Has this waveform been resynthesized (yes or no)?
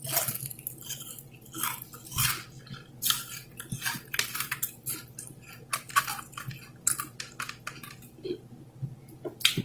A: no